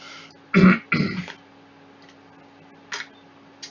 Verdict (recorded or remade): recorded